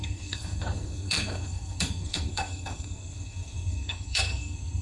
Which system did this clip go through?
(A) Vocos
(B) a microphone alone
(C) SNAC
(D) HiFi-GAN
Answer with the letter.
C